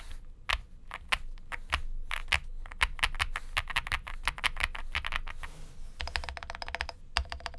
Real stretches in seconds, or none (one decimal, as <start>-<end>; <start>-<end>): 0.0-7.6